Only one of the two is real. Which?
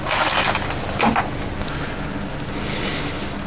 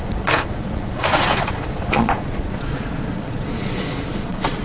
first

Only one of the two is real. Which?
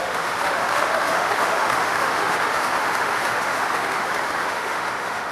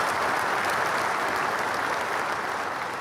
second